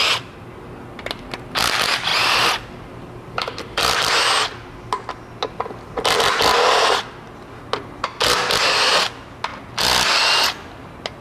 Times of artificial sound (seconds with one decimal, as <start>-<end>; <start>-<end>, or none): 2.1-4.2